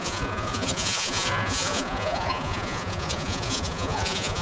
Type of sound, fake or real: fake